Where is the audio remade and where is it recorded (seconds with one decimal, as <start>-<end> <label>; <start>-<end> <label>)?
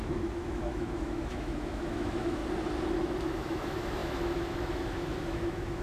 0.0-2.4 remade; 2.4-3.0 recorded; 3.0-5.8 remade